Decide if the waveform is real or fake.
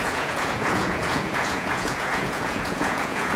fake